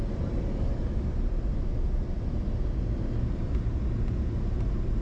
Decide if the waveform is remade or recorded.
recorded